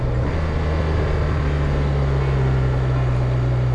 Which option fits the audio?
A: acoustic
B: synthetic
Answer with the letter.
A